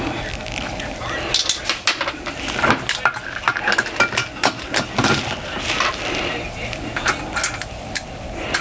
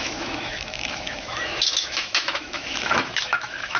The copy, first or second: second